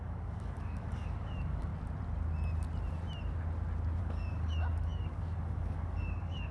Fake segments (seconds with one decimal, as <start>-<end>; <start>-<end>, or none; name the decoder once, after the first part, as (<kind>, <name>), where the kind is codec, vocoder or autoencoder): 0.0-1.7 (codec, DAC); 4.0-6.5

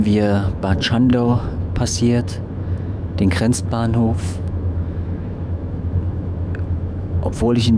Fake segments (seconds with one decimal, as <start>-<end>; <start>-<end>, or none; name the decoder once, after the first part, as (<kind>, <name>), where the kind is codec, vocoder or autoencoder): 0.0-7.8 (autoencoder, DAC-VAE)

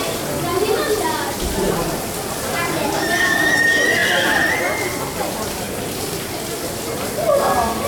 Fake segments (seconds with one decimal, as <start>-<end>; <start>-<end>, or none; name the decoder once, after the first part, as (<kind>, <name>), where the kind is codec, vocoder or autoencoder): 0.5-1.0 (vocoder, BigVGAN v2)